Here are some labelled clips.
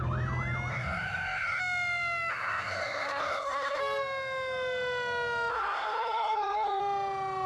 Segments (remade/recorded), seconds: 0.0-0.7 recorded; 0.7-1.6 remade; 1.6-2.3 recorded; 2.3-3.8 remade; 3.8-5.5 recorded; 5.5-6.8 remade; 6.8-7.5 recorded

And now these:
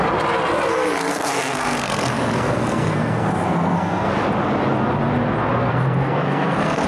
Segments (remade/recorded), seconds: 0.0-0.7 recorded; 0.7-4.1 remade; 4.1-5.7 recorded; 5.7-6.9 remade